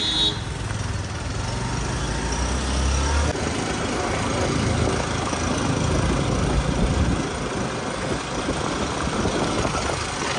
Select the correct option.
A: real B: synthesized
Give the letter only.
A